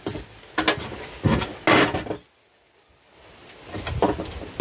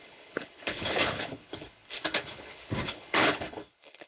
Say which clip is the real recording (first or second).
first